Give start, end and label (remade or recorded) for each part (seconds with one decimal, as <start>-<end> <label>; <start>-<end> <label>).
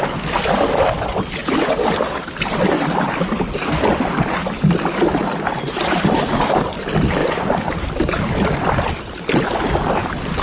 0.0-1.4 remade; 1.4-5.6 recorded; 5.6-7.2 remade; 7.2-8.0 recorded; 8.0-10.4 remade